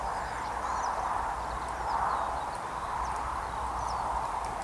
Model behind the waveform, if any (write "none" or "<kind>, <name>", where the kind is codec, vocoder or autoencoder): none